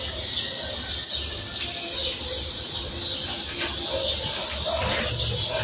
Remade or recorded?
recorded